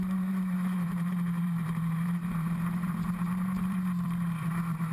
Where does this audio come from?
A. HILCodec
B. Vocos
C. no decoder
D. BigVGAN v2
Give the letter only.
D